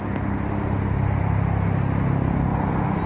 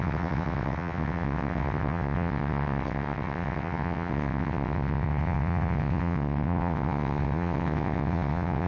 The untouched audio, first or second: first